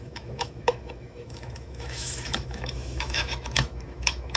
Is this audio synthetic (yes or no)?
yes